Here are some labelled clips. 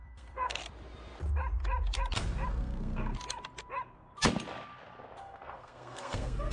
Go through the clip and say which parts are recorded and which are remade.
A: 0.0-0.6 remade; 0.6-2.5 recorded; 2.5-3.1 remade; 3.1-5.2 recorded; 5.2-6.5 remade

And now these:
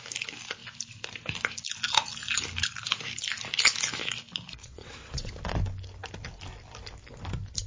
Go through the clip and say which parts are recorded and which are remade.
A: 0.0-4.6 recorded; 4.6-5.3 remade; 5.3-7.7 recorded

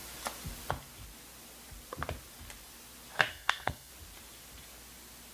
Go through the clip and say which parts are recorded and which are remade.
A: 0.0-3.3 recorded; 3.3-3.9 remade; 3.9-5.3 recorded

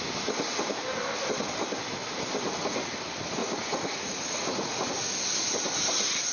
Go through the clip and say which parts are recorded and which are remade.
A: 0.0-3.4 recorded; 3.4-4.9 remade; 4.9-6.3 recorded

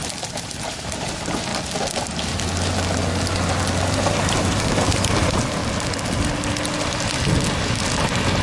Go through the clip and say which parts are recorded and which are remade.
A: 0.0-1.5 remade; 1.5-3.9 recorded; 3.9-5.6 remade; 5.6-8.4 recorded

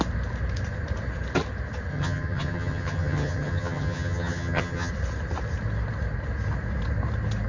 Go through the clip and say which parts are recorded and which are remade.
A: 0.0-1.9 recorded; 1.9-4.9 remade; 4.9-7.5 recorded

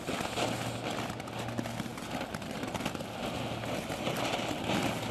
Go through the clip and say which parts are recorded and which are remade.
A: 0.0-5.1 recorded

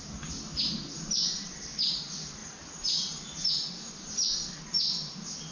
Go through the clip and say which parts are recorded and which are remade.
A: 0.0-1.2 recorded; 1.2-1.9 remade; 1.9-5.5 recorded